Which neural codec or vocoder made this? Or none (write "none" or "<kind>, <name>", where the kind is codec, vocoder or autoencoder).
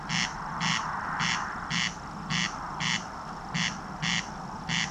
none